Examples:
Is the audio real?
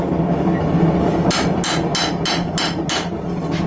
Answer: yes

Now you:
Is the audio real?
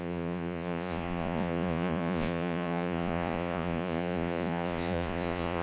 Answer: no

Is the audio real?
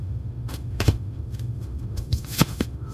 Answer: no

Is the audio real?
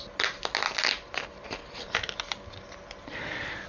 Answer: yes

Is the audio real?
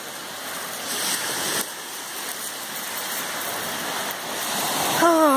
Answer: yes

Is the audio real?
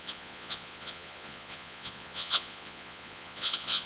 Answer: no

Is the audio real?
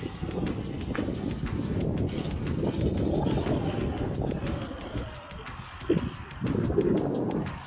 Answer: yes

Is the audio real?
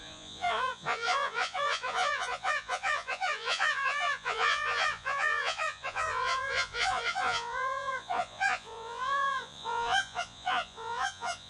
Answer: no